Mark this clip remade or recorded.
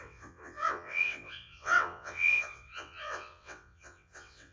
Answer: remade